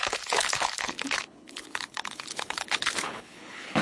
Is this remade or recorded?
remade